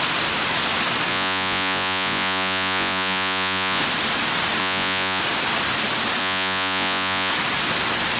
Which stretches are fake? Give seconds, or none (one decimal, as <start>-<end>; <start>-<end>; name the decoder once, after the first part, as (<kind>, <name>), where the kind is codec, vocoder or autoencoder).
1.1-3.8 (vocoder, Vocos); 4.6-5.2; 6.2-7.3